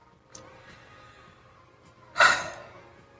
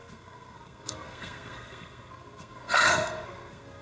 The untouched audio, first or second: first